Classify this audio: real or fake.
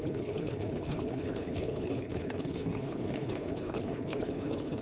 fake